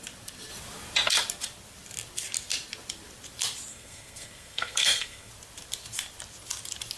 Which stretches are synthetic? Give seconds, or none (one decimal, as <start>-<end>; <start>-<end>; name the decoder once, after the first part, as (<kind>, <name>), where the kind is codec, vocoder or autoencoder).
3.7-5.3 (codec, SNAC)